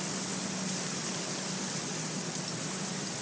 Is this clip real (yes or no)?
yes